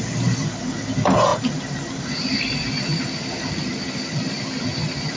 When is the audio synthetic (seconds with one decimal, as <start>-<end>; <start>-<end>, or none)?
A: 1.3-2.5; 2.9-4.2